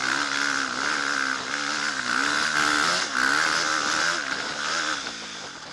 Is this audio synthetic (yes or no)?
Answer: no